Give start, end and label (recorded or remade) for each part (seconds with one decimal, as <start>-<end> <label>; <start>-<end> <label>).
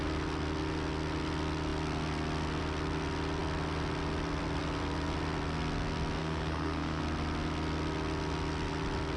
0.0-6.2 recorded; 6.2-7.0 remade; 7.0-9.2 recorded